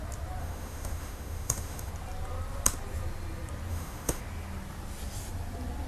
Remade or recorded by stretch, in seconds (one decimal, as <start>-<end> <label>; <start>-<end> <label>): 0.0-0.4 recorded; 0.4-1.9 remade; 1.9-3.7 recorded; 3.7-4.2 remade; 4.2-5.9 recorded

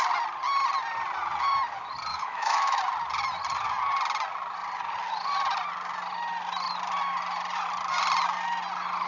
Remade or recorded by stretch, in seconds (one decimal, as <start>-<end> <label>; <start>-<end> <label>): 0.0-2.1 recorded; 2.1-2.8 remade; 2.8-9.1 recorded

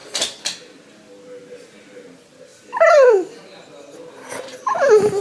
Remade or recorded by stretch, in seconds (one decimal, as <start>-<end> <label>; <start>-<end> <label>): 0.0-5.2 recorded